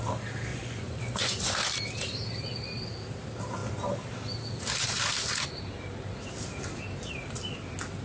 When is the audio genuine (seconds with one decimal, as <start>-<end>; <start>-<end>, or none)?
0.0-0.5; 1.5-8.0